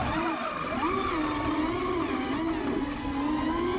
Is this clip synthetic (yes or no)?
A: no